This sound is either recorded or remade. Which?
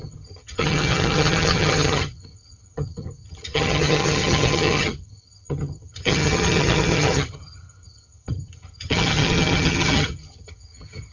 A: remade